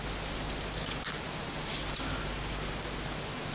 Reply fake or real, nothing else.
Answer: real